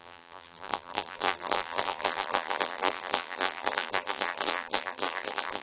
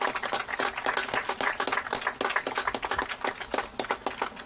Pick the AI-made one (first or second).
first